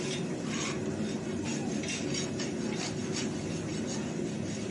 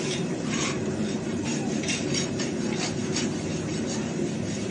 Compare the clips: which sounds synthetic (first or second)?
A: second